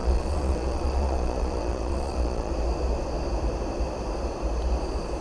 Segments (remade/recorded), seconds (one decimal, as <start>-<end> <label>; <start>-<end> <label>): 0.0-2.5 remade; 2.5-5.2 recorded